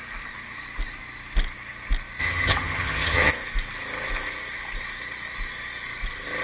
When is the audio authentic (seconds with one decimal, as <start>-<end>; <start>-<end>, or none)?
0.0-2.2; 3.3-6.4